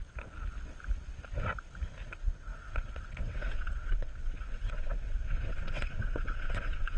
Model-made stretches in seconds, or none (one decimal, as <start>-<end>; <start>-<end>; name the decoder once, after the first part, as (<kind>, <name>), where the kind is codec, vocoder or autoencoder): 2.0-7.0 (vocoder, WaveNeXt)